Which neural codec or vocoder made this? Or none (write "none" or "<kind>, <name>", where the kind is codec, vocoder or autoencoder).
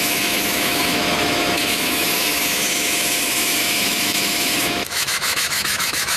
autoencoder, DAC-VAE